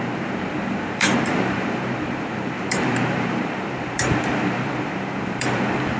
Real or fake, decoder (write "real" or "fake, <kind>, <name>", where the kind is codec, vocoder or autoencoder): fake, vocoder, BigVGAN v2